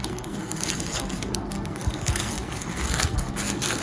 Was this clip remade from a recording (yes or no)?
yes